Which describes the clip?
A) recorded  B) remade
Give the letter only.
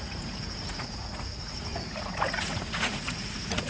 B